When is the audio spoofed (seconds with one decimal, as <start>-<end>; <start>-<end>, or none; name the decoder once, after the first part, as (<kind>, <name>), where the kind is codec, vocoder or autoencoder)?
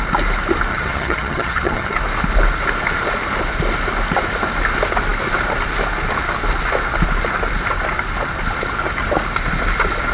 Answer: 0.7-2.0 (vocoder, HiFi-GAN)